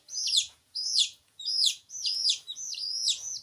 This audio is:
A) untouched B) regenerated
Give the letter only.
B